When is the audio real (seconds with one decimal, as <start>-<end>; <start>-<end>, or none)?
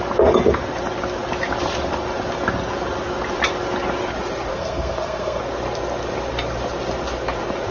0.0-4.5; 5.4-7.7